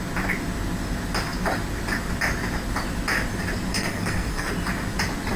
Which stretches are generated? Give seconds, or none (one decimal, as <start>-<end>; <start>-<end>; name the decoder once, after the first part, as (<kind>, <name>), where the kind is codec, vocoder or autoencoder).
3.7-4.5 (codec, SNAC)